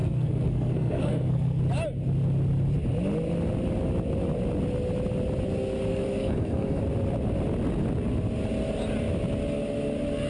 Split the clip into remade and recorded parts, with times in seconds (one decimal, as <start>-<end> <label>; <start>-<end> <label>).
0.0-1.6 remade; 1.6-5.9 recorded; 5.9-6.8 remade; 6.8-10.3 recorded